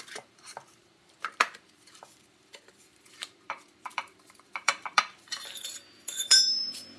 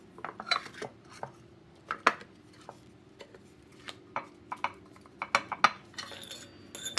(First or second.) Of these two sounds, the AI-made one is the first